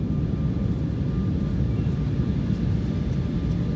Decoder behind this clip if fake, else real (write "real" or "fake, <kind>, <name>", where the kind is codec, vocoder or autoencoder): real